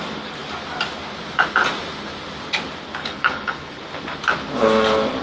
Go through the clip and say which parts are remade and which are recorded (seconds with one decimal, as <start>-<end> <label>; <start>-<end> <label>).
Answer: 0.0-3.0 recorded; 3.0-3.8 remade; 3.8-5.2 recorded